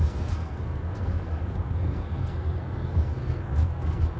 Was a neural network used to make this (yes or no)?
yes